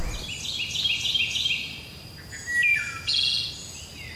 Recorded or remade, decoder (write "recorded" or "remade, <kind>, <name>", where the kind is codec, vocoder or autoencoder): recorded